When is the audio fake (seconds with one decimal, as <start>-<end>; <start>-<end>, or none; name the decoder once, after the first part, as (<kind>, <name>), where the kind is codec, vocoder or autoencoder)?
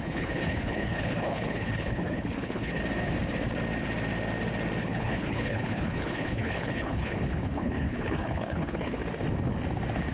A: 0.0-2.8 (codec, HILCodec); 4.8-9.0